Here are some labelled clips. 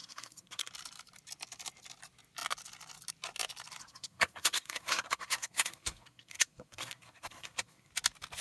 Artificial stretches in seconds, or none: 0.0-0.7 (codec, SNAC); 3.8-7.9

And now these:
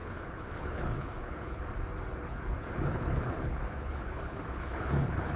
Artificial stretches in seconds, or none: 0.0-1.6 (codec, HILCodec); 2.2-5.4

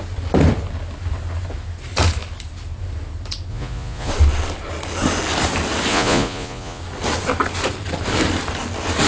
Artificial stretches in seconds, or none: 3.5-4.1 (vocoder, Vocos); 5.9-6.8

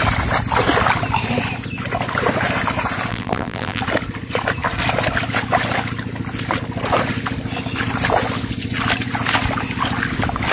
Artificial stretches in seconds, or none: 3.1-3.8 (vocoder, BigVGAN v2)

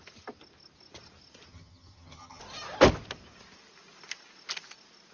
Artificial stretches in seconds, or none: 1.5-2.4 (vocoder, HiFi-GAN)

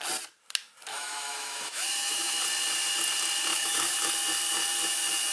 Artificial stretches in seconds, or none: 0.9-2.4 (autoencoder, DAC-VAE); 3.5-4.1